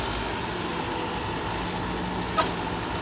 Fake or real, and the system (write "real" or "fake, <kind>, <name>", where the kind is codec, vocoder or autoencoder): real